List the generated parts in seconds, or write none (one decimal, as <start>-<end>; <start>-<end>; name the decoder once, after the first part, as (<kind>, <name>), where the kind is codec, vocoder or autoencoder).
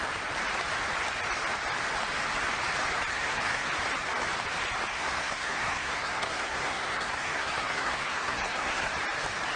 3.1-3.7 (codec, SNAC); 4.9-8.9